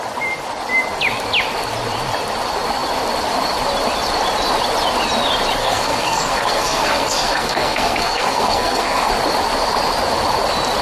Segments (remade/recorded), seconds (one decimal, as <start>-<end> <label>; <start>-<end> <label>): 0.0-5.6 recorded; 5.6-9.1 remade; 9.1-10.8 recorded